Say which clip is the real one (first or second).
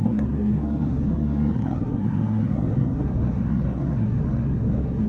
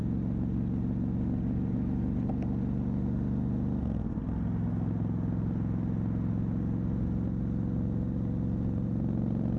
second